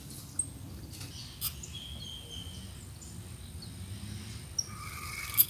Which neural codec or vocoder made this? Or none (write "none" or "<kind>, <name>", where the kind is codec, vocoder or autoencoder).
none